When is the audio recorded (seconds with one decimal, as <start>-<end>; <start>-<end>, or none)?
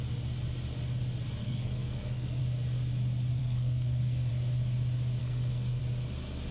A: 0.0-1.4; 2.4-3.4; 4.3-5.2; 5.8-6.5